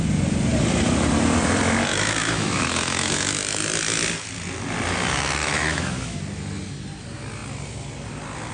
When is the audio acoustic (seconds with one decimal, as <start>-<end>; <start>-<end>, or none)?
0.0-1.9; 3.3-5.4; 6.2-8.5